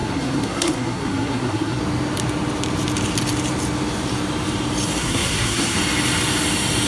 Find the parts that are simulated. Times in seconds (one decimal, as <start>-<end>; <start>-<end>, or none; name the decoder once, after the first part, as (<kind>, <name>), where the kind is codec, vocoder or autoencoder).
0.0-1.8 (codec, SNAC); 5.0-5.8